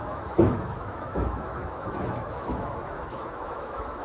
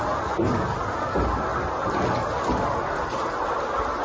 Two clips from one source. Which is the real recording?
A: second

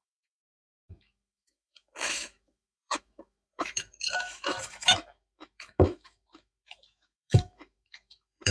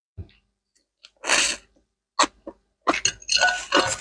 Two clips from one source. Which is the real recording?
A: second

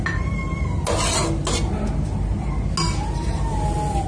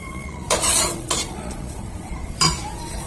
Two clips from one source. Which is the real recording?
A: first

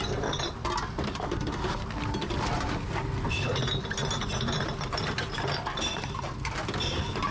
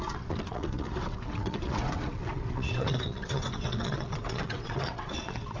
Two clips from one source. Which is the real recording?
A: first